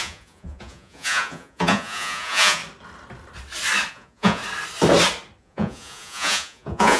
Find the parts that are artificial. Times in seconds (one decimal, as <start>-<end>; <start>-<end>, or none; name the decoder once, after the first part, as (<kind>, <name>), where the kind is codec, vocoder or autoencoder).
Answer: 0.0-2.6 (vocoder, Vocos); 3.9-4.4; 5.4-7.0